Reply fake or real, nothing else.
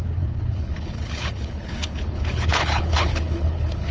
fake